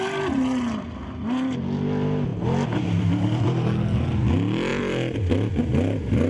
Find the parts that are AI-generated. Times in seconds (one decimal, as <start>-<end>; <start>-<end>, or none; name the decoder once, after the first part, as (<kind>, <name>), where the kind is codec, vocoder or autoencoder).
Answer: none